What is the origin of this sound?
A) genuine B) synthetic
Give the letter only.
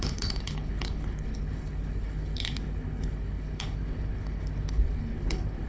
B